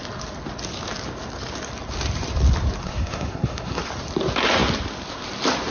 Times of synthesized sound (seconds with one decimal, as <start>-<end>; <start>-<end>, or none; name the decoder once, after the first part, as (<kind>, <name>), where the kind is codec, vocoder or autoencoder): 2.8-3.8 (codec, SNAC)